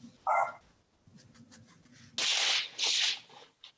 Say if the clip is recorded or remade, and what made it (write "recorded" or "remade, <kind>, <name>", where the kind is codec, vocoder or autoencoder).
recorded